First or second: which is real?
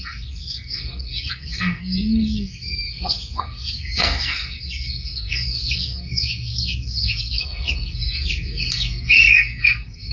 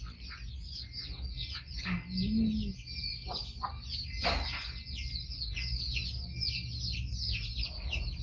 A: second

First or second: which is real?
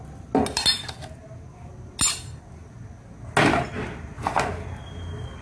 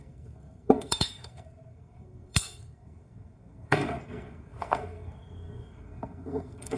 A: first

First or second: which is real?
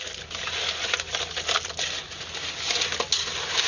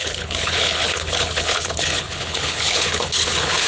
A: first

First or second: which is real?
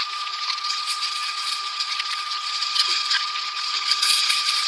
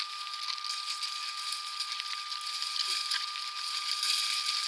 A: second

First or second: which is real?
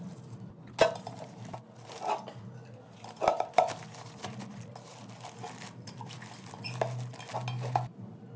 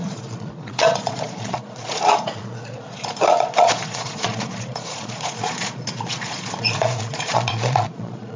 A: first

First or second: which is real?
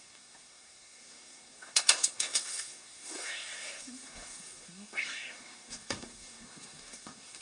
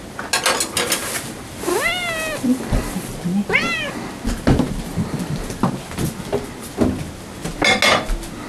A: second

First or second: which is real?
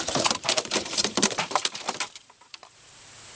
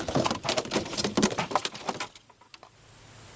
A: second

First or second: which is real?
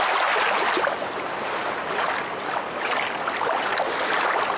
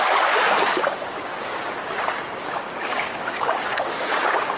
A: first